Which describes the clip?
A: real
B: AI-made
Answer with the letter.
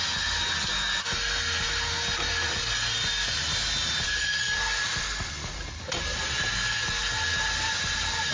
A